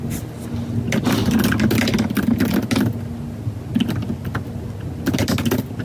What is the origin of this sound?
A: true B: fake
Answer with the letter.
A